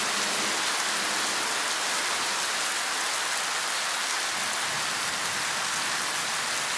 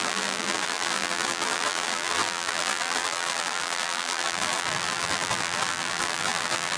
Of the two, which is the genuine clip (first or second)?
first